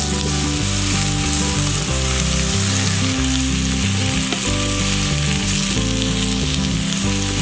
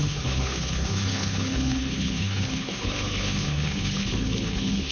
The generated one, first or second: second